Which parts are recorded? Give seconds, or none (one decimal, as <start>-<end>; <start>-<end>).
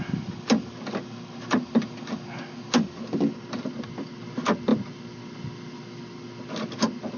0.0-4.7; 6.0-7.2